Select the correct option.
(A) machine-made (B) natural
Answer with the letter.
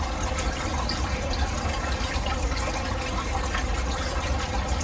B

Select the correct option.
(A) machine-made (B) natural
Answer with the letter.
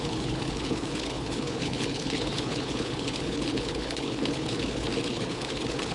A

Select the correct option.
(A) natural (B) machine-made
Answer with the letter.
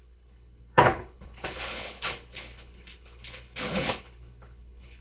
B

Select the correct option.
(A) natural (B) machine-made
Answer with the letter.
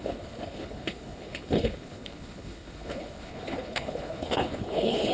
B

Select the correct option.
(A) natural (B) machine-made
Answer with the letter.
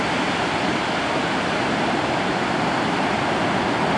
A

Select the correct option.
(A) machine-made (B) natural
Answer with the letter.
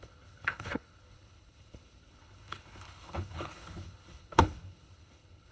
A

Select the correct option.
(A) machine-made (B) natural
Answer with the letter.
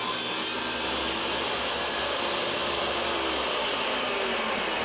B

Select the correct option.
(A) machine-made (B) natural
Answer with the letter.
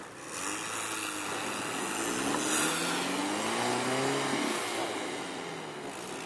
B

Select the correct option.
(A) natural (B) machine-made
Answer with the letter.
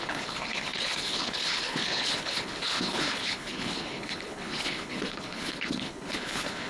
B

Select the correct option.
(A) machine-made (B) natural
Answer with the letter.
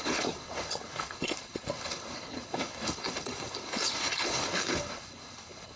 A